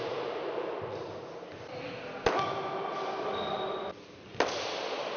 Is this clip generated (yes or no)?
no